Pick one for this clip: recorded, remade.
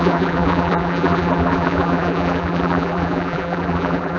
remade